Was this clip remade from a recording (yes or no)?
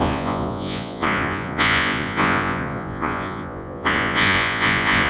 yes